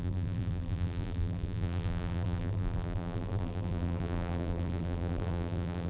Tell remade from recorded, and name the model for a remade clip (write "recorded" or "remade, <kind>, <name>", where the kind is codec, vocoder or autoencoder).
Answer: remade, vocoder, BigVGAN v2